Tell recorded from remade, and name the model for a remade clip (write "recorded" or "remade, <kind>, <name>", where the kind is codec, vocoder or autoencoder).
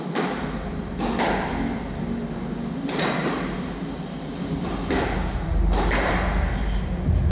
recorded